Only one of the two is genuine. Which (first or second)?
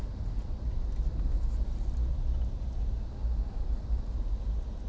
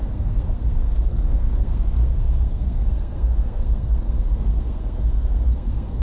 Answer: first